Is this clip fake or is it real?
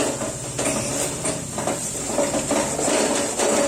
real